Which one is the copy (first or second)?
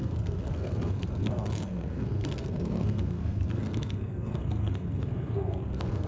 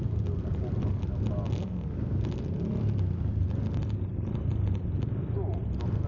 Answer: first